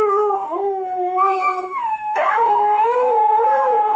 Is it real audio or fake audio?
fake